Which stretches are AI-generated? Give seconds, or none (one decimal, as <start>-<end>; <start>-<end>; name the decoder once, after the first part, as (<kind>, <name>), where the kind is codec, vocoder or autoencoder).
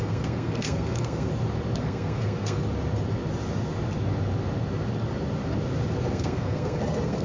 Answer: 0.0-1.3 (codec, SNAC); 1.8-2.6; 6.1-7.2